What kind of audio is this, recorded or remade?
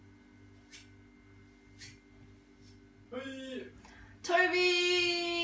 recorded